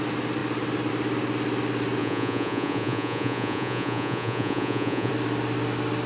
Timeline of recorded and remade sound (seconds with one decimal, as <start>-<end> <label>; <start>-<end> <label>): 0.0-2.0 recorded; 2.0-5.1 remade; 5.1-6.1 recorded